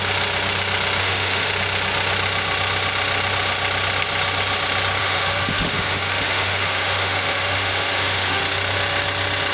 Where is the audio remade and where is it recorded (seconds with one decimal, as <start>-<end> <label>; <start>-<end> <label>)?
0.0-1.0 recorded; 1.0-1.5 remade; 1.5-5.0 recorded; 5.0-8.4 remade; 8.4-9.5 recorded